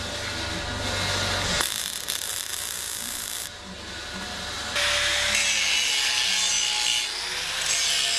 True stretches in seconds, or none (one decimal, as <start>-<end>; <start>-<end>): 0.0-8.2